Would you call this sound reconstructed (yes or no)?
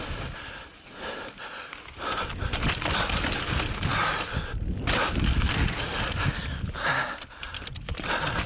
no